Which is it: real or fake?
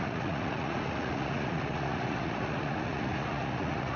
fake